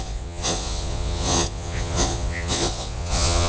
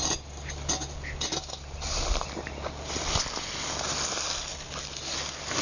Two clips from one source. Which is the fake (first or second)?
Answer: first